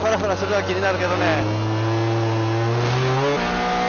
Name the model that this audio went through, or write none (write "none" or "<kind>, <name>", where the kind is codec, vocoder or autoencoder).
none